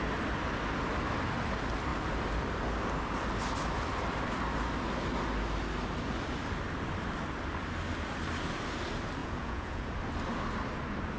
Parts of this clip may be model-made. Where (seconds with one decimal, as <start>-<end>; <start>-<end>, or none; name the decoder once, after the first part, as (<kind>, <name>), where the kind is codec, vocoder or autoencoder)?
9.2-9.9 (vocoder, Vocos)